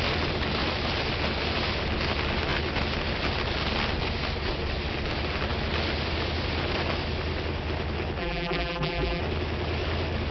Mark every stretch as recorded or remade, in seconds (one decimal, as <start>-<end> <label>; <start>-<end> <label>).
0.0-8.2 recorded; 8.2-9.2 remade; 9.2-10.3 recorded